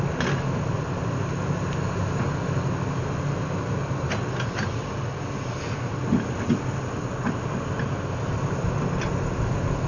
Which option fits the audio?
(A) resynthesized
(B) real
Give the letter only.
B